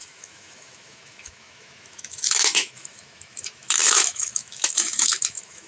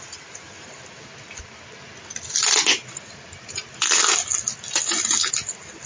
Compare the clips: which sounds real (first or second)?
second